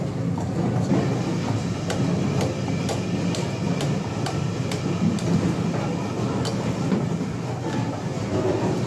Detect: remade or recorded recorded